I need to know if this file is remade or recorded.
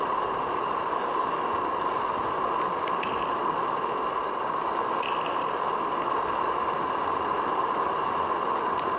recorded